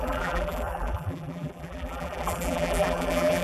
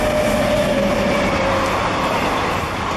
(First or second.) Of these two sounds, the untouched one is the second